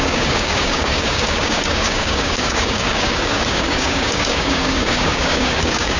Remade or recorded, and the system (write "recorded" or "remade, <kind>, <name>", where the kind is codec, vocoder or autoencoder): remade, codec, DAC